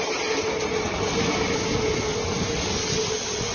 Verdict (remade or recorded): recorded